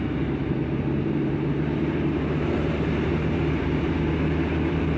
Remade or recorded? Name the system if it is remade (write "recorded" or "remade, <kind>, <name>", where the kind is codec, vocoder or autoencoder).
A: remade, vocoder, BigVGAN v2